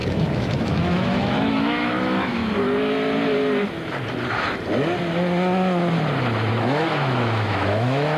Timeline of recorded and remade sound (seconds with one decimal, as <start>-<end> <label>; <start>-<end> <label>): 0.0-2.4 remade; 2.4-6.5 recorded; 6.5-8.2 remade